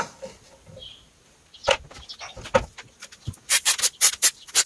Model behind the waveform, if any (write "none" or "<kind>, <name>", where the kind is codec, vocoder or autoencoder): none